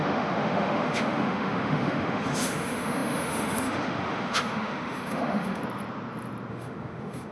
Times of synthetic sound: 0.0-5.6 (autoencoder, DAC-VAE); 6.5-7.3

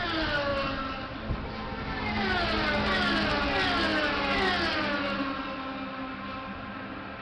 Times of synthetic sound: none